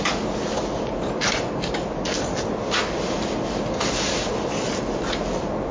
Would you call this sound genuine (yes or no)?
yes